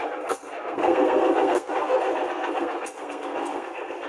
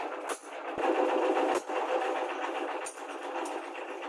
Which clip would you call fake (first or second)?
first